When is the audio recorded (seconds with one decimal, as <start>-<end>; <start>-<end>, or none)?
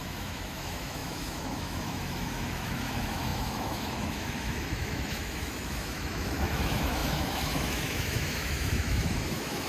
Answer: none